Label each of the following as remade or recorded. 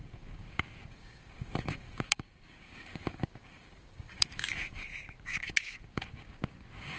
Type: remade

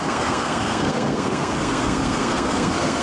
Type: remade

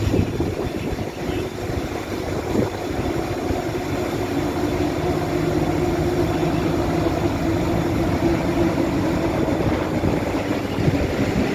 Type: recorded